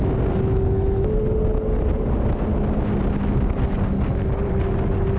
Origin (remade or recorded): recorded